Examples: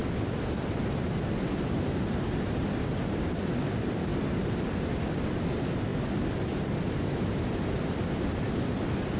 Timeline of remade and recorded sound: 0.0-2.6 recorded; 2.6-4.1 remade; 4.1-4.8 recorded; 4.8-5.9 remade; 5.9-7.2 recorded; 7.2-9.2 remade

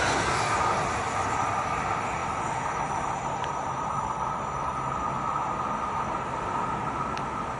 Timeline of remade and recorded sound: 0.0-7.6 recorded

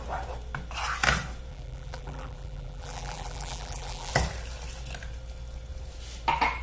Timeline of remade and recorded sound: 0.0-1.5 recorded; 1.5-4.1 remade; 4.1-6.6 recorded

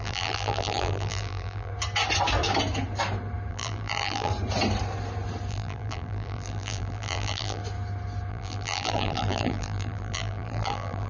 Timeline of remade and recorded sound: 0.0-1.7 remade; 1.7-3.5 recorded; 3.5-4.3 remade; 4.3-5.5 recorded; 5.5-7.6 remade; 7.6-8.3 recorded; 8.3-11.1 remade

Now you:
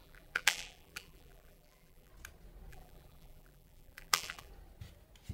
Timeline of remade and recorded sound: 0.0-2.1 remade; 2.1-2.7 recorded; 2.7-4.5 remade; 4.5-5.3 recorded

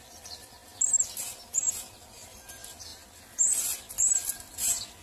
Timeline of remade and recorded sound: 0.0-5.0 recorded

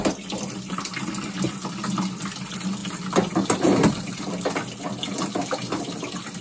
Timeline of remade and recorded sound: 0.0-2.8 recorded; 2.8-4.3 remade; 4.3-6.4 recorded

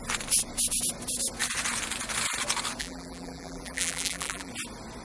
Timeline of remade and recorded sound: 0.0-2.8 recorded; 2.8-4.5 remade; 4.5-5.0 recorded